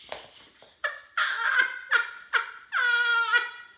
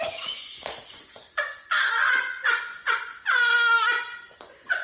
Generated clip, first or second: second